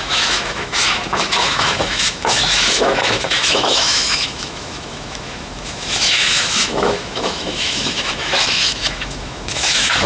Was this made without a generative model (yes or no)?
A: no